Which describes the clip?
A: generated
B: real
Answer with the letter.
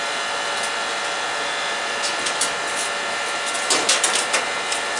B